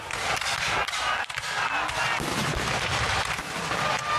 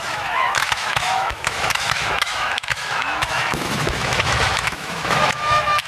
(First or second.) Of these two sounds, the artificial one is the second